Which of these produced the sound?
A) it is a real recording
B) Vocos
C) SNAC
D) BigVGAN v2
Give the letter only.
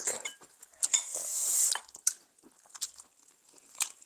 A